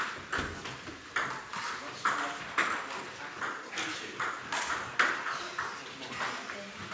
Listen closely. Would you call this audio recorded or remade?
recorded